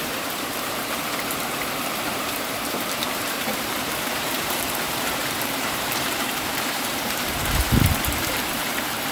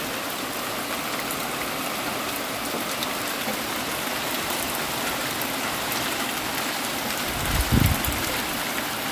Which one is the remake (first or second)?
first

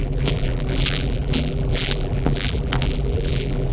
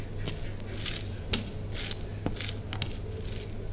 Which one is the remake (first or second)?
first